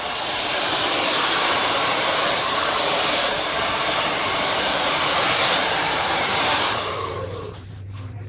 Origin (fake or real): fake